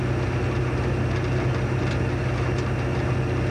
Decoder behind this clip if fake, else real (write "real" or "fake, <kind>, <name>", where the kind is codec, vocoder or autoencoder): real